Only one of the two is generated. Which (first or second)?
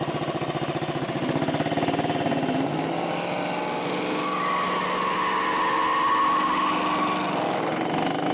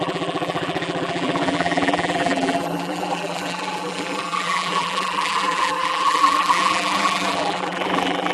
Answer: second